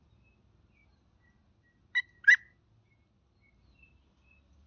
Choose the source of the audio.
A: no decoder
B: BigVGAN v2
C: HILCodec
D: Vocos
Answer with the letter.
A